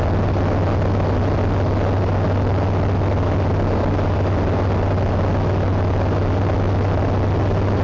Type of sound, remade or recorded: recorded